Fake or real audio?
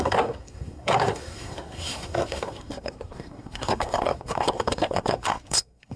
fake